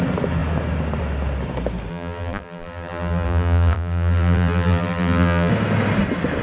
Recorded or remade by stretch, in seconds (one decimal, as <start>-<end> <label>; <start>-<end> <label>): 0.0-1.9 recorded; 1.9-5.5 remade; 5.5-6.4 recorded